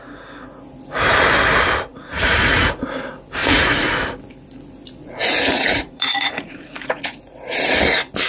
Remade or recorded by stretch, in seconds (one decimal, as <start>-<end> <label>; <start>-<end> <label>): 0.0-1.9 recorded; 1.9-3.0 remade; 3.0-3.4 recorded; 3.4-4.0 remade; 4.0-5.0 recorded; 5.0-7.2 remade; 7.2-8.3 recorded